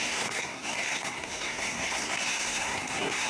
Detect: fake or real fake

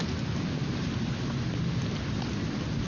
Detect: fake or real real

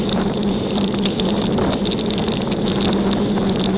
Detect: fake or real real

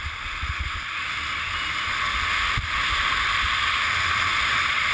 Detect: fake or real real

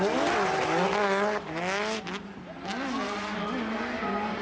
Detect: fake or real real